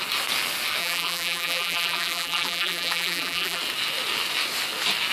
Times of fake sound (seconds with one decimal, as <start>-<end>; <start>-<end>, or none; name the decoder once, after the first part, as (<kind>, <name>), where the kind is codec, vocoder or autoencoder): 0.8-3.6 (vocoder, BigVGAN v2)